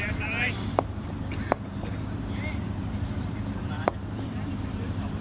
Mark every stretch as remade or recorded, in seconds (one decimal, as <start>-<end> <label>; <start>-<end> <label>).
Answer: 0.0-5.2 remade